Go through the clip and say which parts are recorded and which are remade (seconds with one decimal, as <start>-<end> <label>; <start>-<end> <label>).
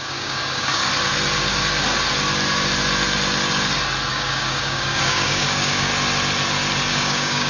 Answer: 0.0-0.8 remade; 0.8-4.1 recorded; 4.1-5.9 remade; 5.9-6.9 recorded; 6.9-7.5 remade